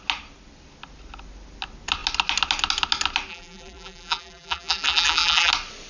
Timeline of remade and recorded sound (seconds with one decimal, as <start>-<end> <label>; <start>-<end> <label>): 0.0-3.3 recorded; 3.3-5.5 remade; 5.5-5.9 recorded